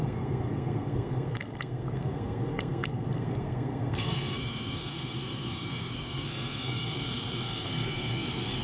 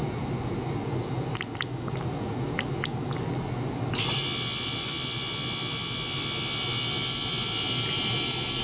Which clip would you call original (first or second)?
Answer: second